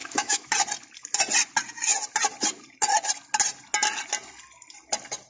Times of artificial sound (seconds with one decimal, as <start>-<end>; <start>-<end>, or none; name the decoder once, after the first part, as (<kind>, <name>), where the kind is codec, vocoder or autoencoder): 0.0-0.5 (autoencoder, DAC-VAE)